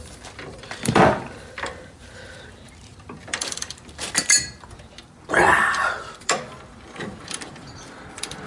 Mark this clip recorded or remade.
remade